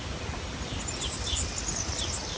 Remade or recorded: recorded